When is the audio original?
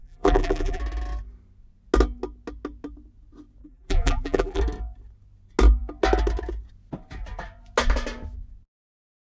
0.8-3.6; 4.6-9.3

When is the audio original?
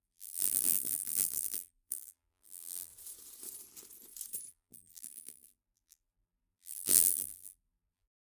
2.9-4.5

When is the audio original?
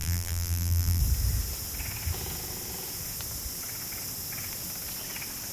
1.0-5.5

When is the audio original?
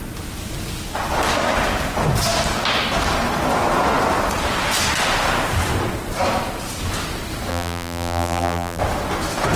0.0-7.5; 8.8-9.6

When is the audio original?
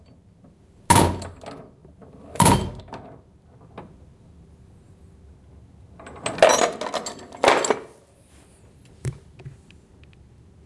0.0-1.8; 2.8-8.8; 9.4-10.7